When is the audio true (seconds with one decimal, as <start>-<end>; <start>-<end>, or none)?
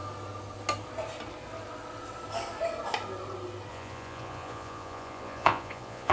0.0-3.7